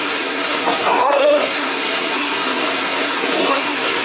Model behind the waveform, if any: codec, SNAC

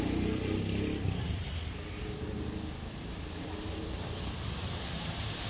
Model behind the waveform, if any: none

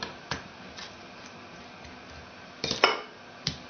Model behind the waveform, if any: none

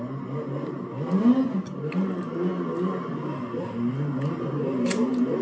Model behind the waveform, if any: none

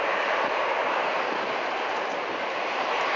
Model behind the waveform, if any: vocoder, BigVGAN v2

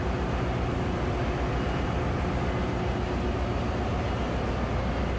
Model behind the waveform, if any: none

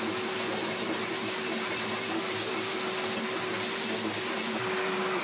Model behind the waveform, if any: none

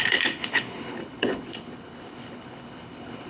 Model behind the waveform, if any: codec, HILCodec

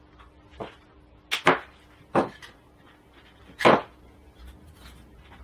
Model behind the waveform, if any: none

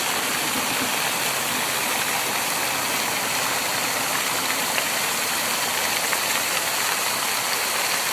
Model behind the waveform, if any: none